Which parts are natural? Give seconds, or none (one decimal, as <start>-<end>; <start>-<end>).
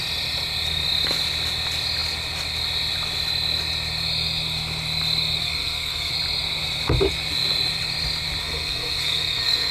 0.0-5.4; 6.1-8.4